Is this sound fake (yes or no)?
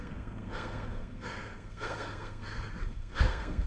yes